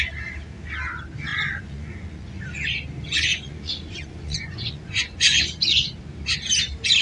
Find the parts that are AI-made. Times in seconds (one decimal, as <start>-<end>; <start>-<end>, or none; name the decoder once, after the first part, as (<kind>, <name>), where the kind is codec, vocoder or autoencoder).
1.3-2.4 (vocoder, Vocos); 3.3-6.0